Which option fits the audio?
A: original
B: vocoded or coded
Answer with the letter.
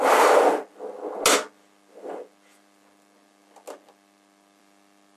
A